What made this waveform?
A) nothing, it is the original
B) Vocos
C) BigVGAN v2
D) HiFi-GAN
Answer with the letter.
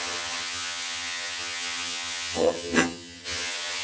D